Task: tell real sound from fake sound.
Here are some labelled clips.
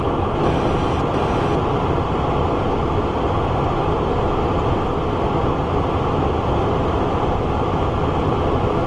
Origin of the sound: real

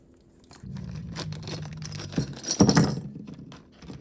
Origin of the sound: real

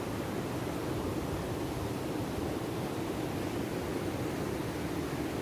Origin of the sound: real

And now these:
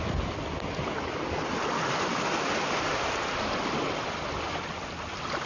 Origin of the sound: real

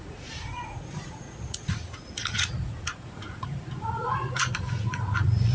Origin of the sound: fake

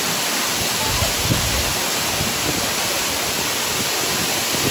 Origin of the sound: real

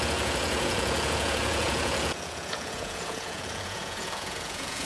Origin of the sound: fake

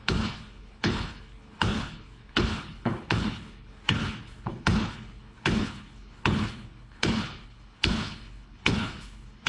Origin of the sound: fake